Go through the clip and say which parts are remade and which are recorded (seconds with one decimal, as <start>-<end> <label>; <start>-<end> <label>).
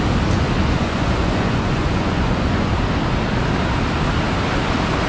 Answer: 0.0-0.6 recorded; 0.6-2.7 remade; 2.7-5.1 recorded